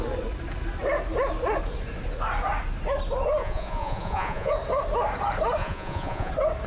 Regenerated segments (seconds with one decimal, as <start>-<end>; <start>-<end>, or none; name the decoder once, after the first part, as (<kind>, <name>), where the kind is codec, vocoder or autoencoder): 3.4-4.5 (vocoder, Vocos); 5.6-6.3